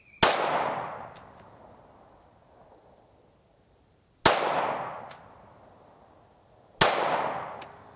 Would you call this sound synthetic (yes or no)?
no